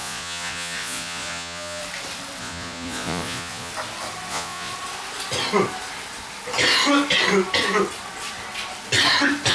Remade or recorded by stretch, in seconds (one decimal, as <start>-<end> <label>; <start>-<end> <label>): 0.0-1.8 remade; 1.8-2.4 recorded; 2.4-3.7 remade; 3.7-4.3 recorded; 4.3-4.7 remade; 4.7-9.5 recorded